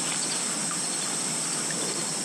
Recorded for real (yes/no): yes